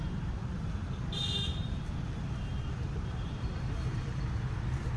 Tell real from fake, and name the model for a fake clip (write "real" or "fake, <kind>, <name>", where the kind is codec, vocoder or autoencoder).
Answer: fake, vocoder, BigVGAN v2